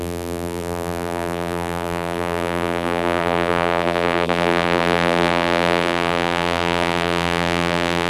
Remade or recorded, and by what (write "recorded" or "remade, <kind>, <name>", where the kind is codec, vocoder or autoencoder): remade, vocoder, BigVGAN v2